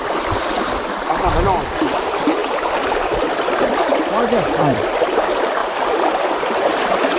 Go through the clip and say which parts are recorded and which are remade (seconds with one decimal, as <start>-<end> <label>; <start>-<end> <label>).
0.0-2.4 recorded; 2.4-5.0 remade; 5.0-5.6 recorded; 5.6-6.7 remade; 6.7-7.2 recorded